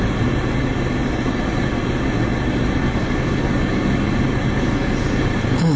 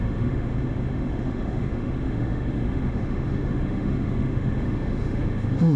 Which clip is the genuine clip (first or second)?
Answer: first